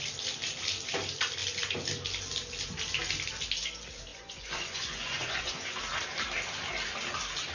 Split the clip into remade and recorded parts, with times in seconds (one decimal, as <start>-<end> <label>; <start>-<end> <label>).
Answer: 0.0-4.1 recorded; 4.1-5.8 remade; 5.8-7.5 recorded